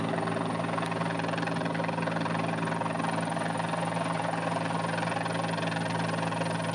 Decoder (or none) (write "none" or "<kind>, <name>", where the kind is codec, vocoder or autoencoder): none